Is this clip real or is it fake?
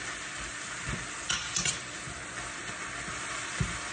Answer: real